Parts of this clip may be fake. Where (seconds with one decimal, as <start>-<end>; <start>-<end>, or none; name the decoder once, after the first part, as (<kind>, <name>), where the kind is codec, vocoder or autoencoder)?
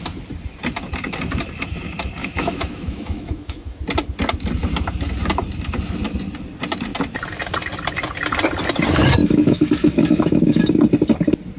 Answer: 2.2-3.8 (autoencoder, DAC-VAE); 9.2-10.6